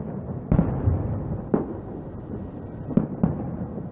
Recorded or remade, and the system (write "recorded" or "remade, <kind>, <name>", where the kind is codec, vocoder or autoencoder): recorded